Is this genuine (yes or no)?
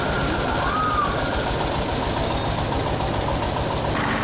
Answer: yes